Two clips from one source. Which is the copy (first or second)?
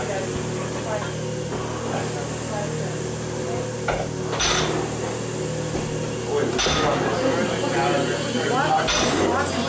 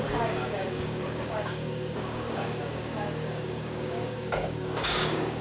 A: second